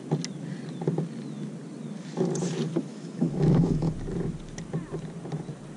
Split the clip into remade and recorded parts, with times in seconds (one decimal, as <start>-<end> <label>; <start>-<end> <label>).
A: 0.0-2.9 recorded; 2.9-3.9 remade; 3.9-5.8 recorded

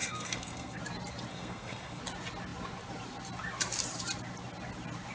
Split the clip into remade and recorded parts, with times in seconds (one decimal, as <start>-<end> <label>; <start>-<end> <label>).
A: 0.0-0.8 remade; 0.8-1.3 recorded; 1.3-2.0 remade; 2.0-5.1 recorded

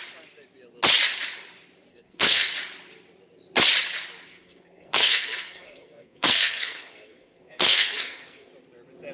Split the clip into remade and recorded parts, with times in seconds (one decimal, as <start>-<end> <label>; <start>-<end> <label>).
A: 0.0-1.9 recorded; 1.9-2.5 remade; 2.5-4.3 recorded; 4.3-8.5 remade; 8.5-9.1 recorded

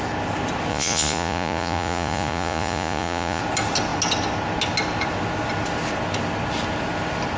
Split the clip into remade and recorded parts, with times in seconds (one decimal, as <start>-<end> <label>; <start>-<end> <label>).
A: 0.0-0.7 recorded; 0.7-3.4 remade; 3.4-7.4 recorded